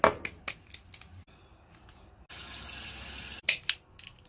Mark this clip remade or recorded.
recorded